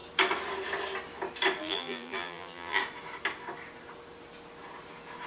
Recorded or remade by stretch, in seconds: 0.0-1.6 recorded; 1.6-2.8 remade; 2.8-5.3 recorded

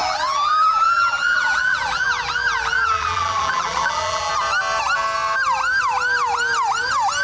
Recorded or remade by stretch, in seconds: 0.0-4.3 remade; 4.3-7.2 recorded

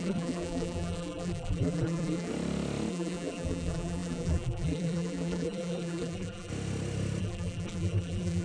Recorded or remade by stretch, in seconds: 0.0-2.3 remade; 2.3-2.9 recorded; 2.9-6.5 remade; 6.5-7.2 recorded; 7.2-8.4 remade

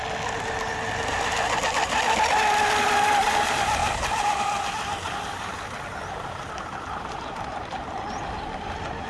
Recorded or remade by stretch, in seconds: 0.0-9.1 recorded

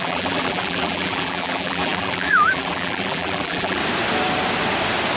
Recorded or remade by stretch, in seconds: 0.0-3.8 remade; 3.8-5.2 recorded